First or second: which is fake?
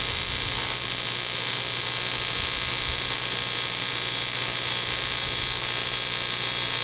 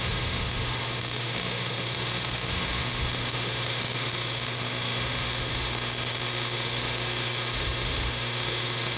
second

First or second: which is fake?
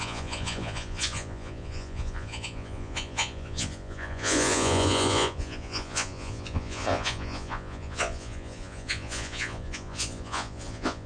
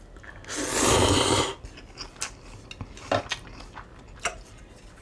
first